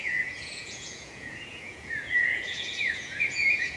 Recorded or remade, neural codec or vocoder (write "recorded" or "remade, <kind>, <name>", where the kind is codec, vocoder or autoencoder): remade, vocoder, Vocos